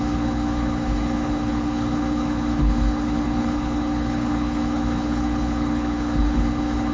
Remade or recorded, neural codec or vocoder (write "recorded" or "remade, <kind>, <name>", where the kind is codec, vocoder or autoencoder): remade, codec, HILCodec